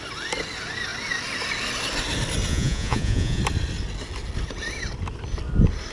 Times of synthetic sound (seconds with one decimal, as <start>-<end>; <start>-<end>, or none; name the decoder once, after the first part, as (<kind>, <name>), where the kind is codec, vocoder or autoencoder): 2.5-3.4 (vocoder, Vocos)